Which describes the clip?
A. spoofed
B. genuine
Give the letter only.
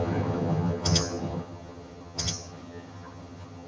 A